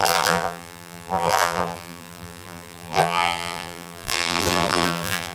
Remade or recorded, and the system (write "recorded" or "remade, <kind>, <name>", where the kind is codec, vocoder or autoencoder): remade, vocoder, BigVGAN v2